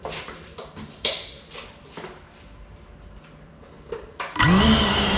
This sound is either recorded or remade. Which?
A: recorded